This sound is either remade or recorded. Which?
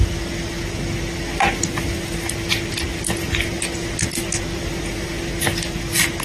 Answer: recorded